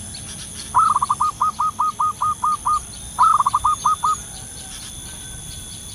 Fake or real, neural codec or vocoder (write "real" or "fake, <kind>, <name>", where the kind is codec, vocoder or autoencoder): real